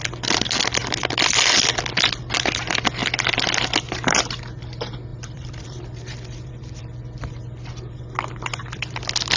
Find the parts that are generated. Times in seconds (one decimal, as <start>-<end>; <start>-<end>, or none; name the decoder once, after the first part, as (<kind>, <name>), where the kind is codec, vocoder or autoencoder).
5.1-6.8 (vocoder, BigVGAN v2)